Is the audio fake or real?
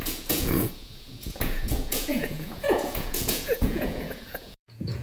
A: fake